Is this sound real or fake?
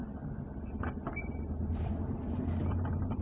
real